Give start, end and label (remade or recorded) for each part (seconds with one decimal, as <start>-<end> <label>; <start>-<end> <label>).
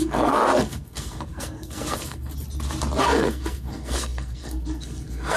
0.0-2.3 remade; 2.3-3.0 recorded; 3.0-5.4 remade